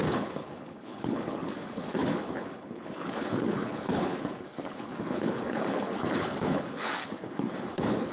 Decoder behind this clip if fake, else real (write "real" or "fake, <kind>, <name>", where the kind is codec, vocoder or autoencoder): fake, codec, HILCodec